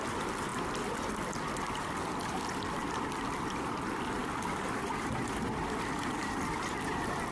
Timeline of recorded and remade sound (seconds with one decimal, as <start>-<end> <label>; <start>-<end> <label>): 0.0-7.3 recorded